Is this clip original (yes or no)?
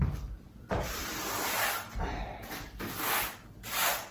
no